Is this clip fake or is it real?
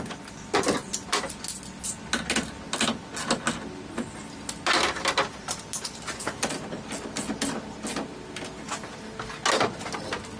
real